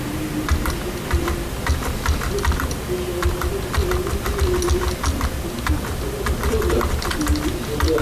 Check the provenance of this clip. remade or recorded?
recorded